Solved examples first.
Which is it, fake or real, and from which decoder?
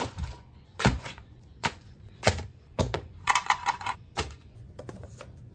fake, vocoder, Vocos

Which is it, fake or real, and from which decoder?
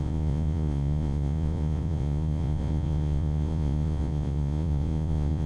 fake, vocoder, Vocos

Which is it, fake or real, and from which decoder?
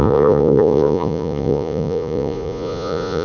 fake, vocoder, Vocos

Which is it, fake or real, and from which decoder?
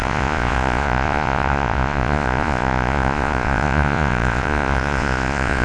fake, vocoder, Vocos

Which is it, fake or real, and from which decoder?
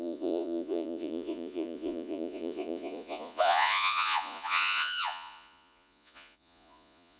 fake, vocoder, Vocos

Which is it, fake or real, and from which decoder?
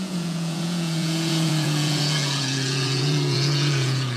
fake, vocoder, Vocos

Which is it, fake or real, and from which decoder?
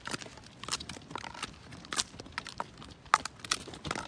real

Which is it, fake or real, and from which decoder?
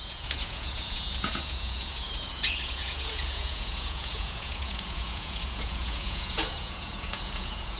fake, vocoder, Vocos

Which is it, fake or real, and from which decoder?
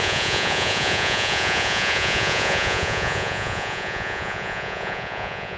fake, vocoder, Vocos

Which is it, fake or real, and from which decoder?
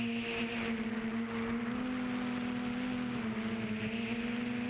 real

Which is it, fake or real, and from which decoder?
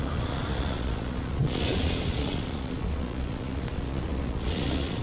fake, vocoder, Vocos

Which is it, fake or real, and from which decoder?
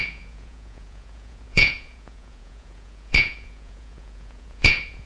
fake, vocoder, Vocos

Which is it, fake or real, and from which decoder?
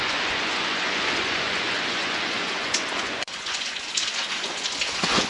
fake, vocoder, Vocos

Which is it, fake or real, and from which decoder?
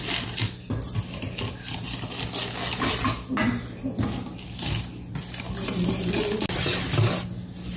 real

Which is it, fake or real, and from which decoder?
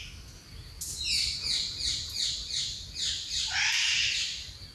real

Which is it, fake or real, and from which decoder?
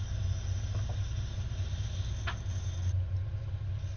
real